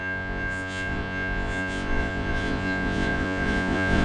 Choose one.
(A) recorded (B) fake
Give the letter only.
B